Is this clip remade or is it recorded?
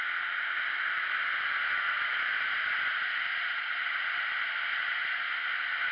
recorded